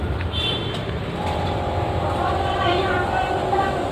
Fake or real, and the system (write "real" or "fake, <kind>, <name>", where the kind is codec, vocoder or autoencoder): fake, vocoder, BigVGAN v2